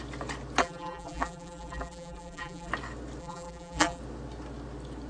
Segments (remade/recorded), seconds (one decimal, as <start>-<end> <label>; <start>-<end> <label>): 0.0-0.6 recorded; 0.6-2.7 remade; 2.7-3.2 recorded; 3.2-4.0 remade; 4.0-5.1 recorded